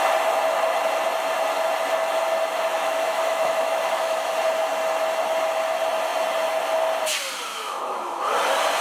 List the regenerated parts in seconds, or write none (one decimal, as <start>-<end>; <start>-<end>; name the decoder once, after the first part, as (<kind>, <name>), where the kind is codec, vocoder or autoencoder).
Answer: 2.7-4.3 (autoencoder, DAC-VAE); 7.5-8.2